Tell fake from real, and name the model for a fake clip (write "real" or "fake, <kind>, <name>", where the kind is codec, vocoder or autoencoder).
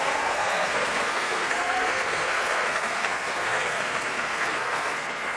fake, codec, SNAC